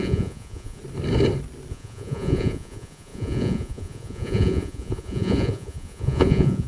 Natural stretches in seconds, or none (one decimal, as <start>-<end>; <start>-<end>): 0.8-1.7